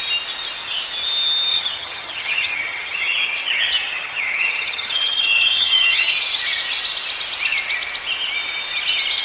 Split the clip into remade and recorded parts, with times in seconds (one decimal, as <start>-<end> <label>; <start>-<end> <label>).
0.0-1.5 recorded; 1.5-6.1 remade; 6.1-9.2 recorded